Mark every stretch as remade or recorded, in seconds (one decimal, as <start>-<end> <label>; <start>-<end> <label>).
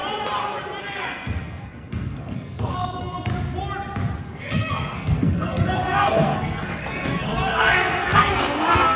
0.0-0.8 recorded; 0.8-3.3 remade; 3.3-4.2 recorded; 4.2-9.0 remade